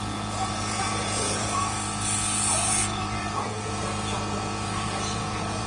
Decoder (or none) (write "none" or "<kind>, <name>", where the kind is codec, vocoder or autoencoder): vocoder, Vocos